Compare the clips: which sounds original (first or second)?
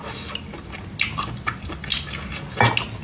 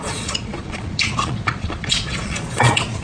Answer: first